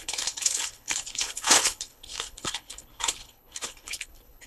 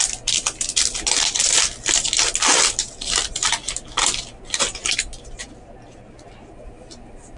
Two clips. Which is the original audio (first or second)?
second